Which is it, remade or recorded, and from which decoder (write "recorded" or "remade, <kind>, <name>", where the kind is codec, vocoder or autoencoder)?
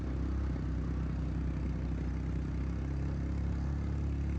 recorded